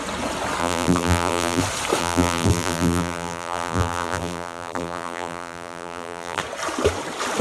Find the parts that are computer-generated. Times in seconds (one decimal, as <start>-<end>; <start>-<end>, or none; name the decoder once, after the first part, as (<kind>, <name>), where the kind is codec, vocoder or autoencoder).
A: 0.6-1.6 (vocoder, BigVGAN v2); 2.0-6.4